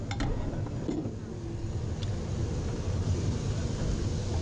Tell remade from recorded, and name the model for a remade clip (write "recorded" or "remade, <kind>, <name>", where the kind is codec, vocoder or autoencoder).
recorded